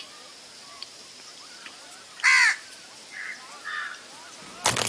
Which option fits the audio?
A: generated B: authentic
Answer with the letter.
B